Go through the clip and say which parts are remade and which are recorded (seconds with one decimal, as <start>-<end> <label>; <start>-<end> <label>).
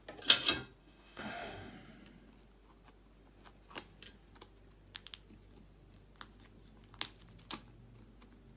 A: 0.0-0.8 recorded; 0.8-1.7 remade; 1.7-8.6 recorded